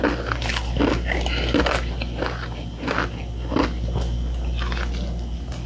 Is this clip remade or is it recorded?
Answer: recorded